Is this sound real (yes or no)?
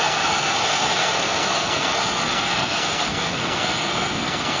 no